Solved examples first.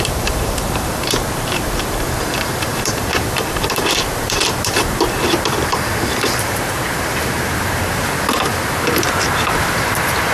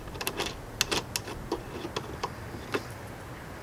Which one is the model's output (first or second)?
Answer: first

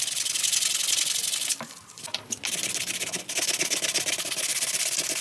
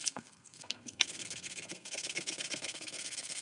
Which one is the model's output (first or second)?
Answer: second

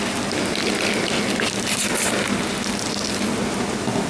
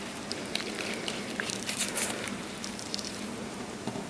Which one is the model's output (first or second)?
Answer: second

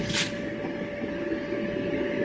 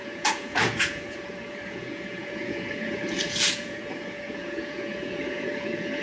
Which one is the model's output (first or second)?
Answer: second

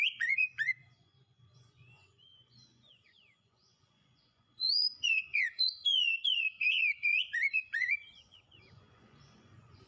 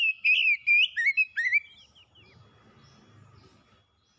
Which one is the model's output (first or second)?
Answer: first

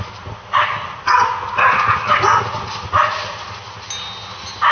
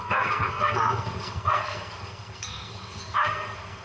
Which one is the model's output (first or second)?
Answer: second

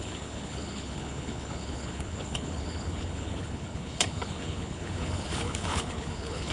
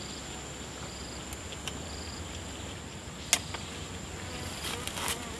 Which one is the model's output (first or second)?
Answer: first